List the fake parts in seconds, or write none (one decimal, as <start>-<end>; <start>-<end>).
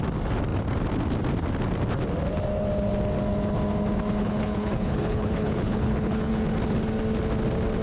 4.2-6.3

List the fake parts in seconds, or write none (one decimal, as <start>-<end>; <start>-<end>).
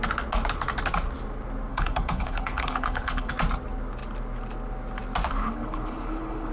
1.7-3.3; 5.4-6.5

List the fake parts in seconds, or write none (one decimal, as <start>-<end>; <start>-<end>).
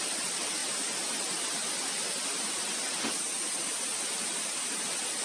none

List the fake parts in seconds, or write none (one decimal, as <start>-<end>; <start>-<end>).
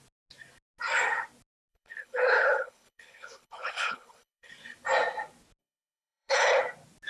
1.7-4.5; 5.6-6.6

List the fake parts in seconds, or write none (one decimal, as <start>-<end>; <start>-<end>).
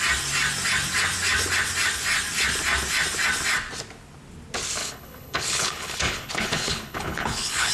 4.8-7.7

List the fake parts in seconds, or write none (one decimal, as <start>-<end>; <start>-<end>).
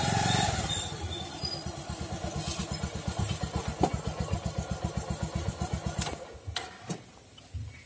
none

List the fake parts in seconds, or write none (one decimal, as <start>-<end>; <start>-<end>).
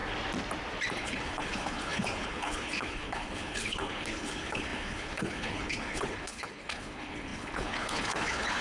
0.9-8.6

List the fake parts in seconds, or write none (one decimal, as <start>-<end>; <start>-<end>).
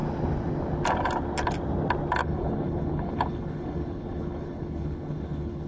2.2-5.7